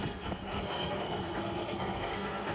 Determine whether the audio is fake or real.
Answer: fake